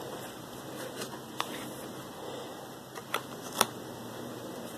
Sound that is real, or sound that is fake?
real